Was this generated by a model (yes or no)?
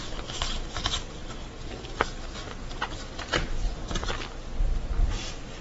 no